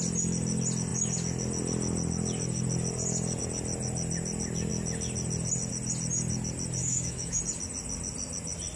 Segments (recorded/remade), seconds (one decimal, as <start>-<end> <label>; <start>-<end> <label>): 0.0-6.8 recorded; 6.8-7.4 remade; 7.4-8.8 recorded